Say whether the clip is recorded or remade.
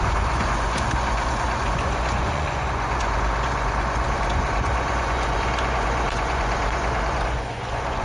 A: remade